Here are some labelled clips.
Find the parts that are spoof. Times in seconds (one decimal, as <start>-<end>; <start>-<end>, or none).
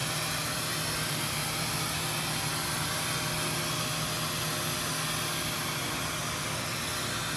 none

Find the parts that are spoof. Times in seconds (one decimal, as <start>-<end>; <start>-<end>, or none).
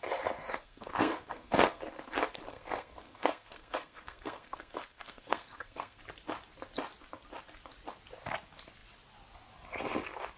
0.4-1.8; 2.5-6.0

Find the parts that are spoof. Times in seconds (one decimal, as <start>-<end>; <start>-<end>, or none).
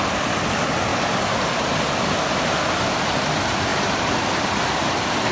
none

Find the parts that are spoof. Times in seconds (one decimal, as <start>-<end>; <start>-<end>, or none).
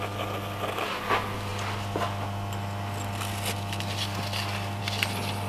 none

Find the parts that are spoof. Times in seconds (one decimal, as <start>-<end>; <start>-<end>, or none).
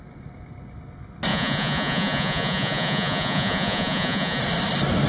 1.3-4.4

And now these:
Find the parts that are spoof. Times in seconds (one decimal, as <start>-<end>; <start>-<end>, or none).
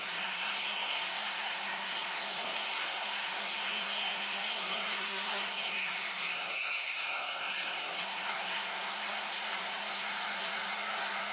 0.0-11.3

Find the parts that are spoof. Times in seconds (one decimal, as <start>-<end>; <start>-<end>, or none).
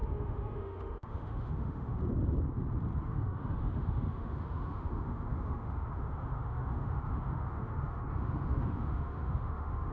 0.0-2.0; 3.0-9.9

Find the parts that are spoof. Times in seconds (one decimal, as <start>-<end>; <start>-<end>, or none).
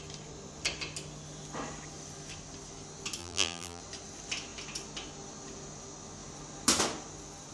3.2-3.8